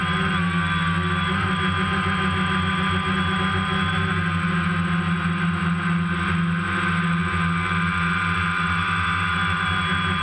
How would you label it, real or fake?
real